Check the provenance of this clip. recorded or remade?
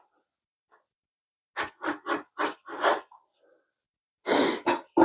recorded